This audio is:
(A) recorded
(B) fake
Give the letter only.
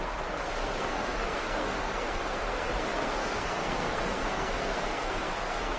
B